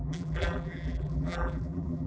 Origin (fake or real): fake